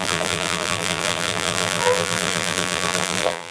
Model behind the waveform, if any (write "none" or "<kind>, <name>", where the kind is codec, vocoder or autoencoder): vocoder, BigVGAN v2